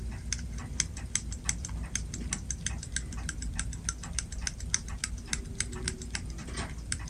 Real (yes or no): yes